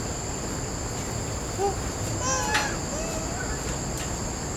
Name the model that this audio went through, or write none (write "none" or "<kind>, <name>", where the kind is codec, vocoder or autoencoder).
none